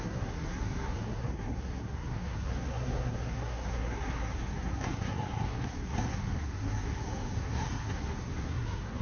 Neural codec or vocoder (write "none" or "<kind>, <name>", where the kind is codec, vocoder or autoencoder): codec, SNAC